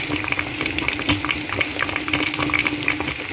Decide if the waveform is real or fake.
real